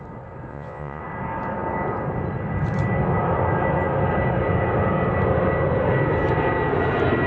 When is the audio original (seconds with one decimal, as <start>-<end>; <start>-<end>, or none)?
0.0-0.5; 1.0-7.3